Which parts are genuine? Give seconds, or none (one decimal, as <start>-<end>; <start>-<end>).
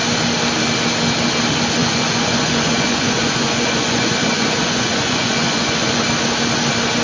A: 0.0-1.8; 6.0-7.0